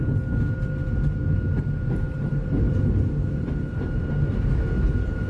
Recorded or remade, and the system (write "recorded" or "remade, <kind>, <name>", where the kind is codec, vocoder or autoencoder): recorded